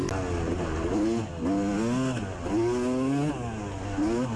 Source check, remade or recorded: recorded